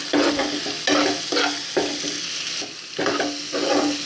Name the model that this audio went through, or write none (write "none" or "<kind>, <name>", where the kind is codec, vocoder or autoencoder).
none